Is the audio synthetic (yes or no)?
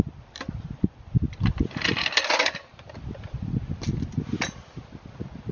no